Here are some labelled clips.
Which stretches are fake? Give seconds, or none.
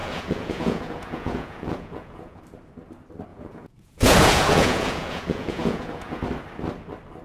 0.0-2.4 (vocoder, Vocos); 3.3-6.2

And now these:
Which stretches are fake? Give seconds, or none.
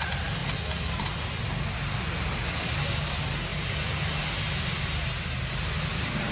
none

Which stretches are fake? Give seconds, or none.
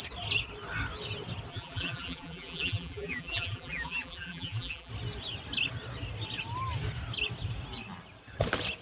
1.5-4.9 (vocoder, BigVGAN v2)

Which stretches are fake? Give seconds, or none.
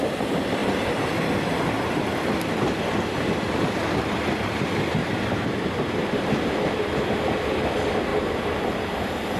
5.0-6.8 (vocoder, BigVGAN v2); 8.1-9.4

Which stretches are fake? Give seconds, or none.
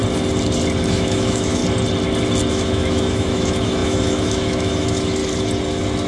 0.9-1.6 (autoencoder, DAC-VAE); 2.5-5.2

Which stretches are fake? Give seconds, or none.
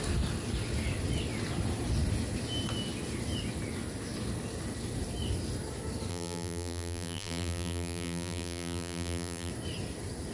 6.1-9.5 (vocoder, BigVGAN v2)